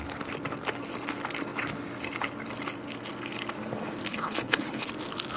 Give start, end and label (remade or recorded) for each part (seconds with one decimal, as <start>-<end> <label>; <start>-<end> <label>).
0.0-4.1 recorded; 4.1-4.9 remade; 4.9-5.4 recorded